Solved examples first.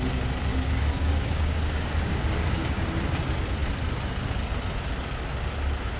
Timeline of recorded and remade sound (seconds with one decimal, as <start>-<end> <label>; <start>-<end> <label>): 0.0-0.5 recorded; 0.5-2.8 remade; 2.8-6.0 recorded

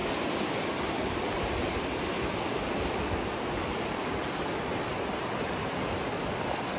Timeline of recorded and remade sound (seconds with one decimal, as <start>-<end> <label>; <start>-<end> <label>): 0.0-6.8 recorded

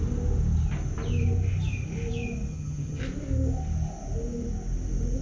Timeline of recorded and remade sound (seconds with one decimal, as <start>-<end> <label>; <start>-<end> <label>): 0.0-2.5 recorded; 2.5-3.0 remade; 3.0-5.2 recorded

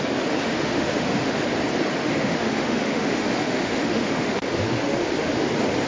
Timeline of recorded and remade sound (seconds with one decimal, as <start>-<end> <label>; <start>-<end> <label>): 0.0-0.4 recorded; 0.4-1.4 remade; 1.4-2.0 recorded; 2.0-5.5 remade; 5.5-5.9 recorded

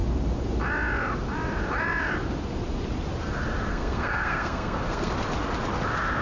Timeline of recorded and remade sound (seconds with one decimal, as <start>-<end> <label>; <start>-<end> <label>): 0.0-3.7 recorded; 3.7-5.1 remade; 5.1-6.2 recorded

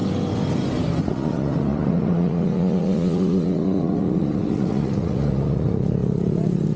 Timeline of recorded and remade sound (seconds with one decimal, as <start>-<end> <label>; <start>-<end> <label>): 0.0-1.0 recorded; 1.0-6.8 remade

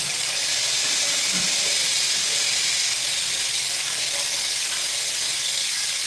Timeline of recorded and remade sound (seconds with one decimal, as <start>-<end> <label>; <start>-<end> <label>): 0.0-0.5 remade; 0.5-3.5 recorded; 3.5-4.8 remade; 4.8-5.4 recorded; 5.4-6.1 remade